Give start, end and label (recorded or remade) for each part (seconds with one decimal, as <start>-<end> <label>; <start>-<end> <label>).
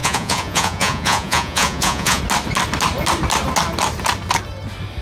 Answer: 0.0-2.2 remade; 2.2-5.0 recorded